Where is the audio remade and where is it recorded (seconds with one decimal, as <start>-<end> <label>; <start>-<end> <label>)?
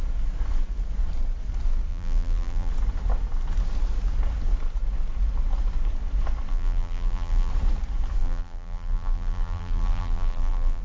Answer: 0.0-1.9 recorded; 1.9-2.7 remade; 2.7-6.5 recorded; 6.5-7.5 remade; 7.5-8.2 recorded; 8.2-10.8 remade